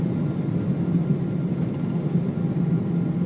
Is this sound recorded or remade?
recorded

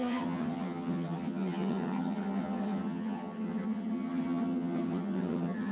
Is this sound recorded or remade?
remade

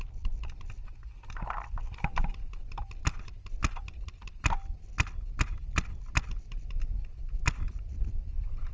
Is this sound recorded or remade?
recorded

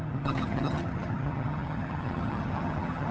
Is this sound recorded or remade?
remade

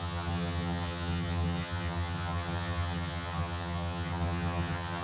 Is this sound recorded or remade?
remade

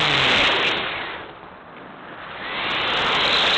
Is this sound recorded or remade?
recorded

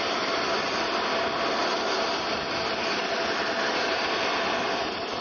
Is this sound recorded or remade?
recorded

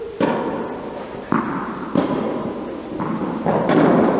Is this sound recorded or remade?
recorded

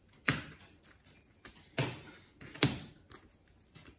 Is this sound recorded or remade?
recorded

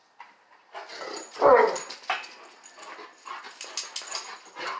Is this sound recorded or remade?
recorded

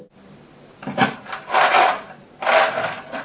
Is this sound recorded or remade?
recorded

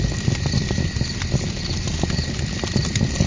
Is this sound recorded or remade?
recorded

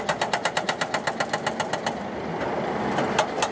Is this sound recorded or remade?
recorded